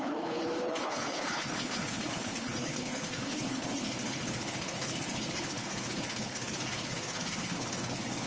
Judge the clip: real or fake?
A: fake